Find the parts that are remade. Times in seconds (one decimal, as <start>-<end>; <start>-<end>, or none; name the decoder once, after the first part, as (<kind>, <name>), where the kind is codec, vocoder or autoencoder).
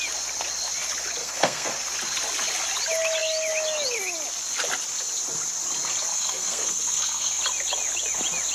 1.2-1.7 (codec, SNAC); 6.1-7.4